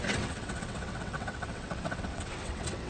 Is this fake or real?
fake